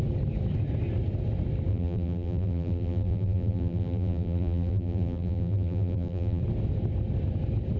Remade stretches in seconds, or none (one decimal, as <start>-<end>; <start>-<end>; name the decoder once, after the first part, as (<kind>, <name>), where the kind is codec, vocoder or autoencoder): 1.7-6.4 (vocoder, BigVGAN v2)